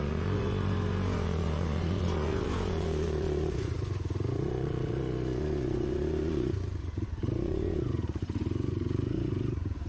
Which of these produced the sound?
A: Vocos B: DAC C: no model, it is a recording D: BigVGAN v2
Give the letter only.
A